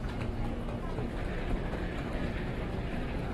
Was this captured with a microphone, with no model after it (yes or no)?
yes